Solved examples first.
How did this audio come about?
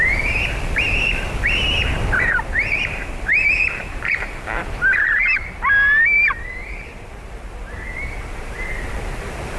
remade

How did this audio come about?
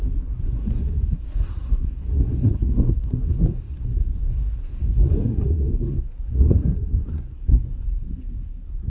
remade